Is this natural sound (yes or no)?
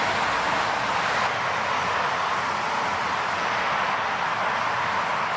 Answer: yes